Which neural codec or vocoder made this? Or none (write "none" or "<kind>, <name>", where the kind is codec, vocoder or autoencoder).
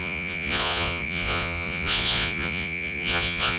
vocoder, Vocos